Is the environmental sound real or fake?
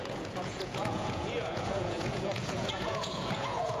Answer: fake